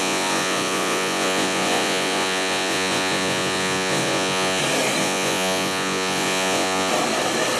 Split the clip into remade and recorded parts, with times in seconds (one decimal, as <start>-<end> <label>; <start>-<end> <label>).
0.0-4.6 remade; 4.6-5.0 recorded; 5.0-6.9 remade; 6.9-7.6 recorded